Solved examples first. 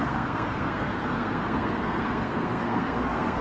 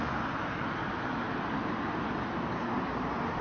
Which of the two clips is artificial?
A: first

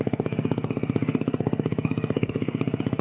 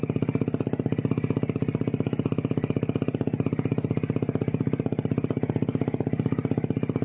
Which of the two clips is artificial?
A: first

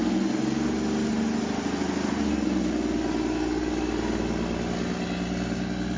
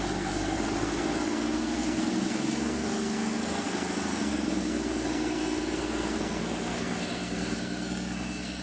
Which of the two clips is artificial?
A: second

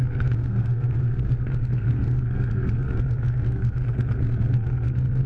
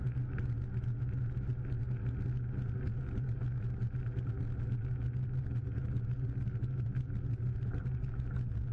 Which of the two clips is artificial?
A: first